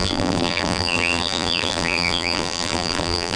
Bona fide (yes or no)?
no